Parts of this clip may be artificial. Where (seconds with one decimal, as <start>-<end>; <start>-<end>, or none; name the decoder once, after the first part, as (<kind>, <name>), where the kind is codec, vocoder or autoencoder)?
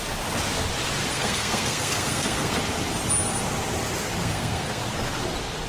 1.1-2.6 (codec, SNAC); 4.2-4.8